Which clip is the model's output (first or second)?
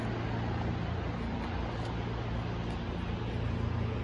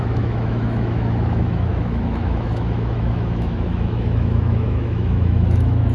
second